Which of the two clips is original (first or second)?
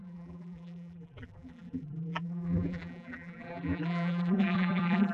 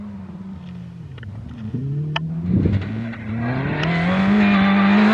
second